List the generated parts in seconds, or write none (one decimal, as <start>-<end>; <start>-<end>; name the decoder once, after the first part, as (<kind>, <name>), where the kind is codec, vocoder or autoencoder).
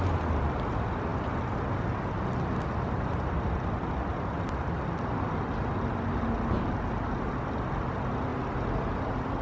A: none